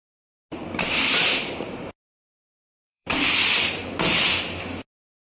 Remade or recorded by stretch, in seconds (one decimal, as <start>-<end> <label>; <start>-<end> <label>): 0.0-0.6 recorded; 0.6-3.8 remade; 3.8-5.3 recorded